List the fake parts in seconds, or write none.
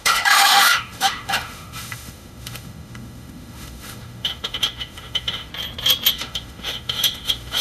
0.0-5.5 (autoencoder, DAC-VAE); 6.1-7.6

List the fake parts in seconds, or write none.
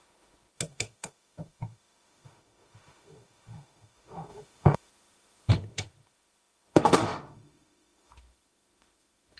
0.0-9.4 (autoencoder, DAC-VAE)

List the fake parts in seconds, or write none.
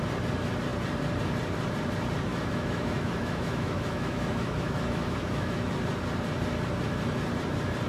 2.3-5.7 (autoencoder, DAC-VAE)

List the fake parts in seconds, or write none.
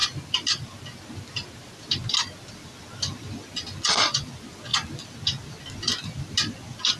none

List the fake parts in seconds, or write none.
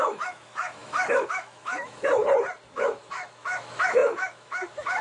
0.0-2.2 (autoencoder, DAC-VAE); 2.7-5.0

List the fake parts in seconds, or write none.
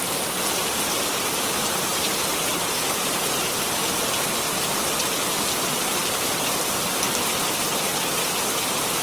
none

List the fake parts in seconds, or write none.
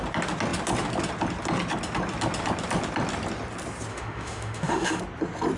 3.9-5.0 (autoencoder, DAC-VAE)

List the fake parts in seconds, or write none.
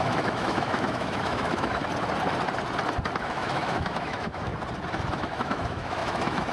0.0-1.8 (autoencoder, DAC-VAE); 3.2-4.5; 5.1-6.5